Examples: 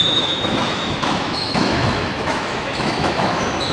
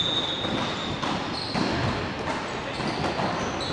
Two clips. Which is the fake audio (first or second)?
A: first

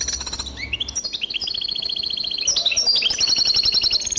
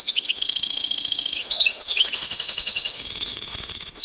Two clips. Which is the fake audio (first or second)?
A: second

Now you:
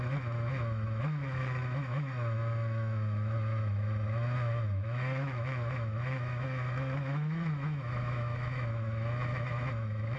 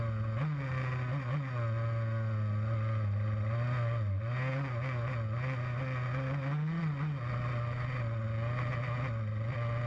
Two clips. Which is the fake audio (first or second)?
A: first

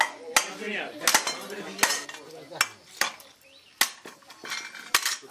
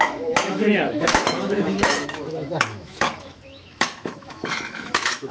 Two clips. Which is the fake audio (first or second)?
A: second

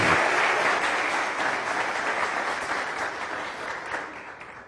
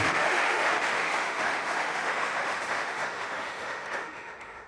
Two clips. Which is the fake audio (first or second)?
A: second